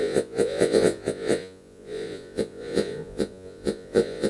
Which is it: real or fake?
fake